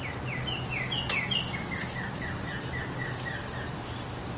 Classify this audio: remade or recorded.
recorded